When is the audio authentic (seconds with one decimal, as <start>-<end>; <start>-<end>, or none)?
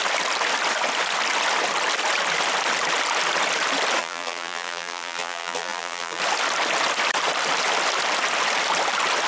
0.0-4.0; 6.2-9.3